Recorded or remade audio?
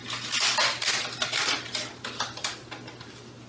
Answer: recorded